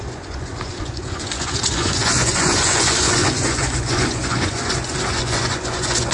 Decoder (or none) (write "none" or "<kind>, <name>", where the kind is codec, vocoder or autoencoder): vocoder, Vocos